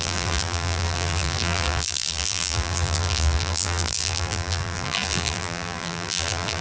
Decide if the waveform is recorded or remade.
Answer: remade